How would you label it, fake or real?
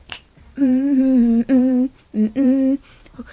fake